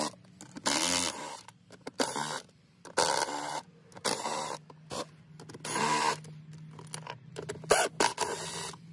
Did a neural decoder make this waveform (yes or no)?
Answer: no